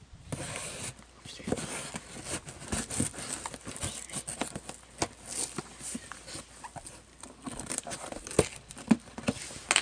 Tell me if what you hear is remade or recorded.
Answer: recorded